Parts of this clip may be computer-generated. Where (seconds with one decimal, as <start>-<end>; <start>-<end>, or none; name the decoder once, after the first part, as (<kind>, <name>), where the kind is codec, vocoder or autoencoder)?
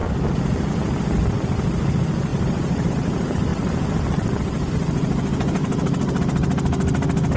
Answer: 2.3-2.9 (vocoder, BigVGAN v2); 3.5-4.7; 5.6-6.2